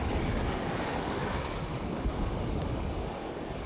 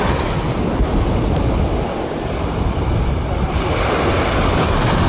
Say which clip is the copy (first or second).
first